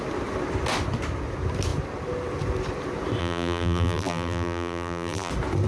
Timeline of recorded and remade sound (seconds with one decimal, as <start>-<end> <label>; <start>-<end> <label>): 0.0-3.2 recorded; 3.2-5.3 remade; 5.3-5.7 recorded